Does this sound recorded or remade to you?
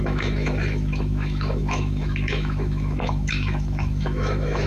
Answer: remade